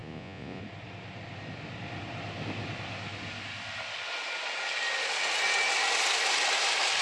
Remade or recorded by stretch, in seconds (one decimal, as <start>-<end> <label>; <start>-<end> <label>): 0.0-0.6 remade; 0.6-7.0 recorded